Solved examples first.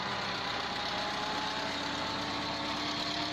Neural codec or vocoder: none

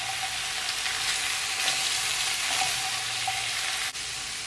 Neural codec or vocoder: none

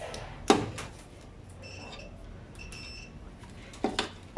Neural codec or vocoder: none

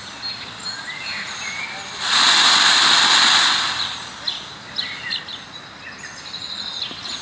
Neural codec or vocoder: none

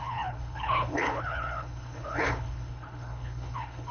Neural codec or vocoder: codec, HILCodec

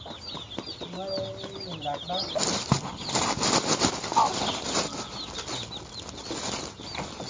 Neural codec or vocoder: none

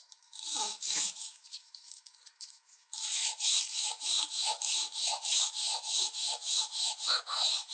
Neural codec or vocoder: autoencoder, DAC-VAE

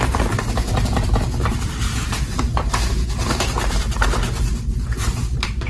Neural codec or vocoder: vocoder, BigVGAN v2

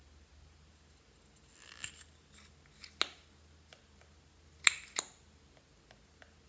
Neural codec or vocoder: none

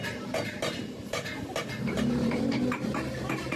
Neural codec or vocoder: vocoder, BigVGAN v2